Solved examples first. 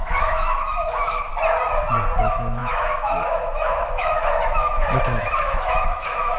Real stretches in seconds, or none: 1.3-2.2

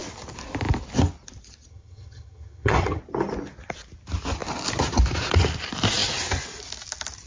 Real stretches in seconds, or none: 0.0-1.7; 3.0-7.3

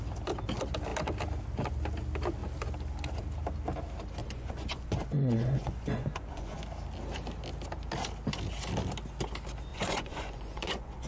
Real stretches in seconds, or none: 0.0-4.2; 6.6-9.7